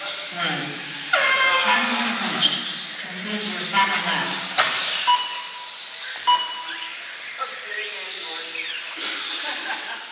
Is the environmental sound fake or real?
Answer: real